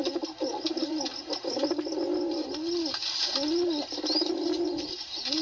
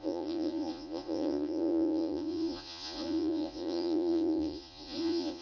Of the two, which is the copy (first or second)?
second